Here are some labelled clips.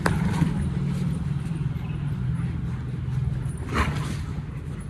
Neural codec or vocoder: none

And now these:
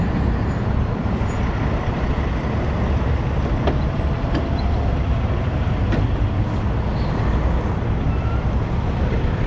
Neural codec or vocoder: none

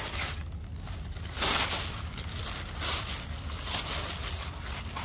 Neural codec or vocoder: none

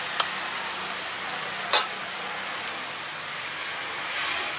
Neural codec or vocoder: none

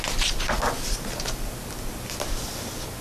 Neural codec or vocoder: none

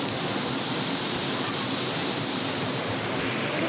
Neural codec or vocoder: none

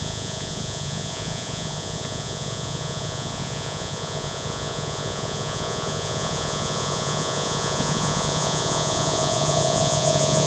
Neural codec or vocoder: vocoder, Vocos